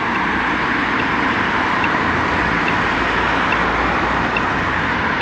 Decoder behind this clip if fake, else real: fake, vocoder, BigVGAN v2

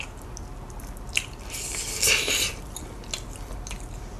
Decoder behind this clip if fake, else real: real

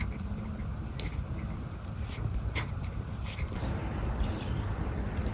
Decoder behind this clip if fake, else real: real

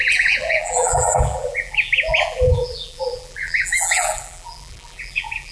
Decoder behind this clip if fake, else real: fake, vocoder, BigVGAN v2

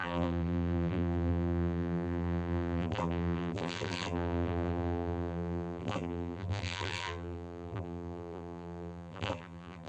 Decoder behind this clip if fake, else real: fake, vocoder, BigVGAN v2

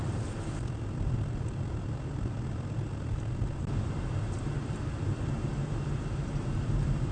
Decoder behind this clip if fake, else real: fake, vocoder, BigVGAN v2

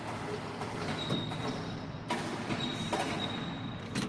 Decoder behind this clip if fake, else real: real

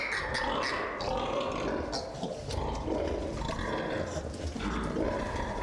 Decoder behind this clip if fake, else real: real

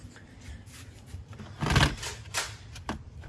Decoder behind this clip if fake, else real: fake, vocoder, BigVGAN v2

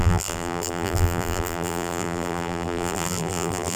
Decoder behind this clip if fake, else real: fake, vocoder, BigVGAN v2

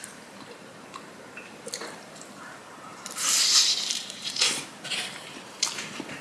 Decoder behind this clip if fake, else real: fake, vocoder, BigVGAN v2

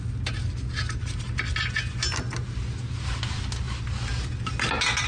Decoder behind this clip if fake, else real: real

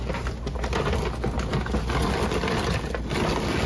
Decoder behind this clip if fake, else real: real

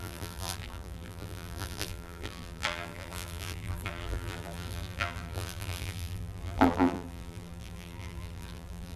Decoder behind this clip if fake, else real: fake, vocoder, BigVGAN v2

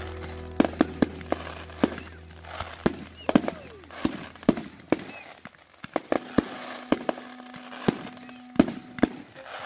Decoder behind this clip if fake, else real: real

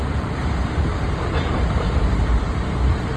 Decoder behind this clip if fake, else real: fake, vocoder, BigVGAN v2